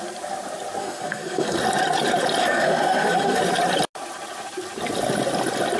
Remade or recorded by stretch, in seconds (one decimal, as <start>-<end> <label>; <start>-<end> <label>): 0.0-0.8 recorded; 0.8-1.6 remade; 1.6-2.4 recorded; 2.4-3.4 remade; 3.4-5.8 recorded